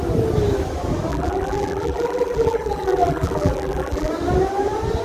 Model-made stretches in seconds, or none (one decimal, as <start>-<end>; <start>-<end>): 1.1-4.1